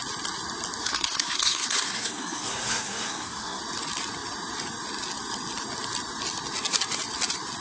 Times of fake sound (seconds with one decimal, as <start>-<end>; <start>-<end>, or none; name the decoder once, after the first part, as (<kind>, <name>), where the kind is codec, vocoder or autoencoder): 0.8-3.6 (codec, SNAC)